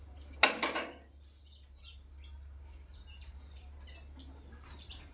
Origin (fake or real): real